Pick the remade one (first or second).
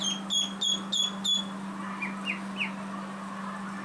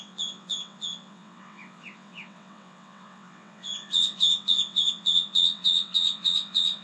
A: second